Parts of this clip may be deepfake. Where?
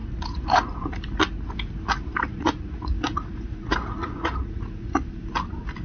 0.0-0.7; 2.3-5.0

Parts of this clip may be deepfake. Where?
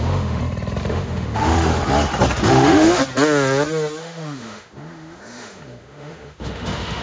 0.0-0.4; 0.9-1.7; 2.5-3.0; 4.0-7.0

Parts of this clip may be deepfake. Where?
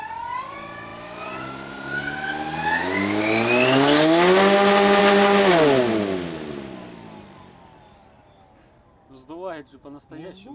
none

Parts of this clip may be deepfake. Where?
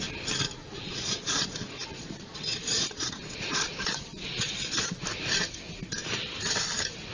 0.6-4.9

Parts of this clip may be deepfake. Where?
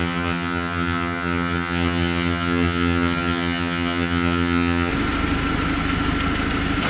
0.0-4.9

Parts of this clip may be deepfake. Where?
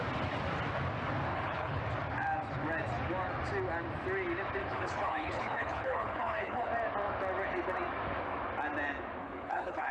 1.3-1.8; 4.6-6.7; 9.2-9.9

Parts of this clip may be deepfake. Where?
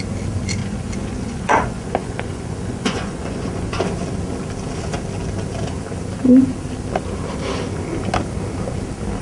0.6-3.8